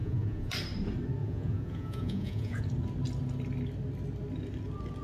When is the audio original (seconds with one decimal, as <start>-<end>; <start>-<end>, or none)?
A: 0.5-1.2; 2.6-5.0